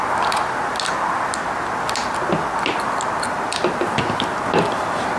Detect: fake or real real